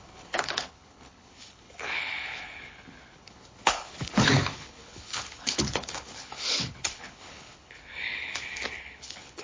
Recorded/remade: remade